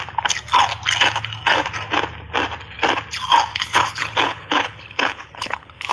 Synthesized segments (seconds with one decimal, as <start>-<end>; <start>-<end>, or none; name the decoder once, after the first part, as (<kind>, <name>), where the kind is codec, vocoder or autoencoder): 3.5-5.9 (codec, HILCodec)